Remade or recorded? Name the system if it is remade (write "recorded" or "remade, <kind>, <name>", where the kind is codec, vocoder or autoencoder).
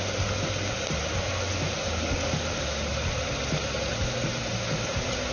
recorded